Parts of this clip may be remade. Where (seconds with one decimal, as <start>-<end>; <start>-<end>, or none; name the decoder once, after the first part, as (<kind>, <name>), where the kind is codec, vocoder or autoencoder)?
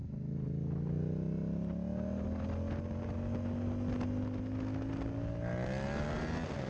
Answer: none